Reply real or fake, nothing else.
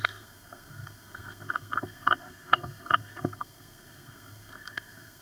fake